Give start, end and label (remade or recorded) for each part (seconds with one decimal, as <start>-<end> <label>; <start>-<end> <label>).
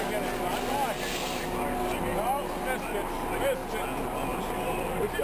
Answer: 0.0-4.3 recorded; 4.3-5.2 remade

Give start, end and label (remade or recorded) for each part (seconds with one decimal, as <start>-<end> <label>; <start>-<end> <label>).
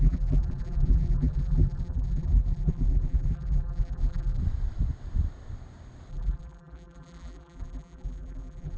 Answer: 0.0-4.4 remade; 4.4-6.1 recorded; 6.1-8.8 remade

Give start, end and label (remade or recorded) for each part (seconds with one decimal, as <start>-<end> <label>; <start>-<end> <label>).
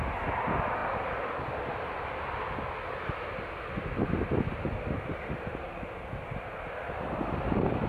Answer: 0.0-7.9 recorded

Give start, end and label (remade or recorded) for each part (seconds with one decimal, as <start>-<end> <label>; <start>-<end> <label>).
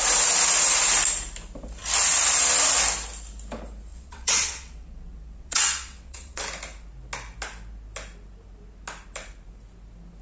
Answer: 0.0-3.9 recorded; 3.9-6.4 remade; 6.4-10.2 recorded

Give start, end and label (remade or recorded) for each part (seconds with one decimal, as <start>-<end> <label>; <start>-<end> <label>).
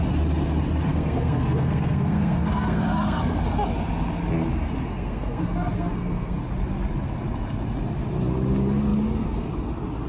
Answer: 0.0-0.9 recorded; 0.9-3.4 remade; 3.4-4.9 recorded; 4.9-6.4 remade; 6.4-10.1 recorded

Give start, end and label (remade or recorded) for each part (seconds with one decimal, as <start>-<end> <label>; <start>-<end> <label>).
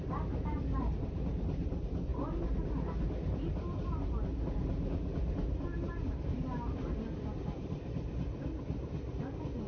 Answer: 0.0-9.7 recorded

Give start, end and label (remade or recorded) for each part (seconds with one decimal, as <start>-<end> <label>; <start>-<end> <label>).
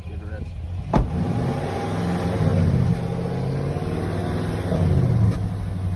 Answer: 0.0-6.0 recorded